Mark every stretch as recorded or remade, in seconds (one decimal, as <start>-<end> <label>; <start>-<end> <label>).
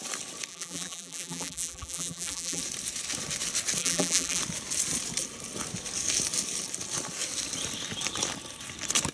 0.0-0.5 recorded; 0.5-2.6 remade; 2.6-3.8 recorded; 3.8-4.4 remade; 4.4-9.1 recorded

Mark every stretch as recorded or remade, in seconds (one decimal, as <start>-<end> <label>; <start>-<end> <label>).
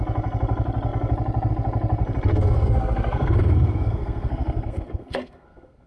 0.0-2.3 recorded; 2.3-5.9 remade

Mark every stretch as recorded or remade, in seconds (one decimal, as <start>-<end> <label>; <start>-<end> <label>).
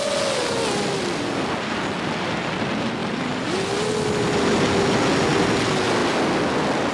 0.0-6.9 recorded